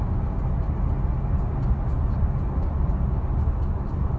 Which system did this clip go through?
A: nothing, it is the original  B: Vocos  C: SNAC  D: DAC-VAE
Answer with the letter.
A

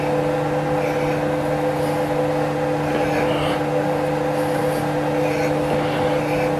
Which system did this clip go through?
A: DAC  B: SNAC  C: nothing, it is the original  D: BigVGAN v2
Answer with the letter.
C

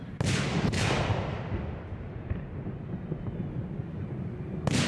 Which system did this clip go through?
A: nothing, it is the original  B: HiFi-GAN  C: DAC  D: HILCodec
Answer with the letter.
A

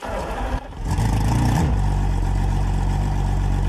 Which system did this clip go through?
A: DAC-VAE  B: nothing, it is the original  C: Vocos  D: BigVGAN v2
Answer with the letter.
D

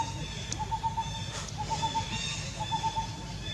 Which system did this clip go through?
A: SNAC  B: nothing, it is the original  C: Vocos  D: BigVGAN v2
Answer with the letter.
B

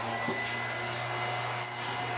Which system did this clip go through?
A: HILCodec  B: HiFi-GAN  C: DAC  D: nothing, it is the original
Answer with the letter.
D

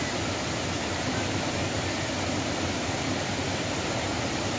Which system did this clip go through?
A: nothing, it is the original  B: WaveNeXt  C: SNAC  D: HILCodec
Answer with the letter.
A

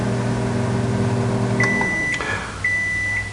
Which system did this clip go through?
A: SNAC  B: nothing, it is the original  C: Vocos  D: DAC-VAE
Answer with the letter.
B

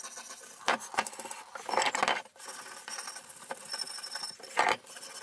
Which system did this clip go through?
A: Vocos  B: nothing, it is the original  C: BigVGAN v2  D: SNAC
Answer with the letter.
B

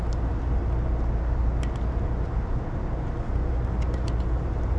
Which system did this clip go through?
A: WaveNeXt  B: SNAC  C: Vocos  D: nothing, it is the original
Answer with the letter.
D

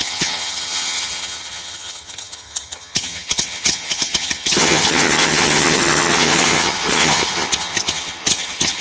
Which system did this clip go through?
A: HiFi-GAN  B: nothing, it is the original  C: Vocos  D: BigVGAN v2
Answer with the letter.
A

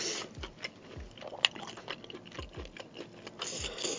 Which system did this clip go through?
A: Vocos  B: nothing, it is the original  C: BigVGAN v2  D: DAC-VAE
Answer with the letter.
B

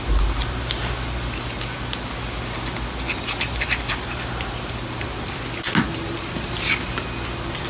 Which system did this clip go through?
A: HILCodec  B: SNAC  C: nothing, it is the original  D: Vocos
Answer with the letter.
C